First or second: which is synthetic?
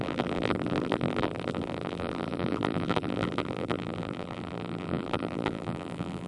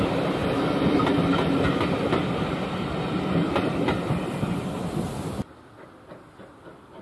first